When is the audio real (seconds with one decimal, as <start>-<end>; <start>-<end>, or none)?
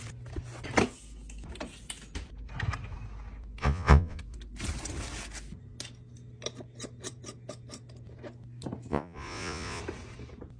0.0-3.6; 4.2-8.9; 9.8-10.6